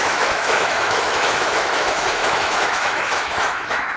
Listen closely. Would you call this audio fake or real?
fake